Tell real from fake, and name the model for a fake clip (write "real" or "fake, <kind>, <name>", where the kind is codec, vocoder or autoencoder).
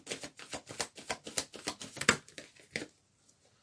real